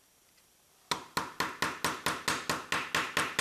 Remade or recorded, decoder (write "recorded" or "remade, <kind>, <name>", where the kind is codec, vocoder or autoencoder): recorded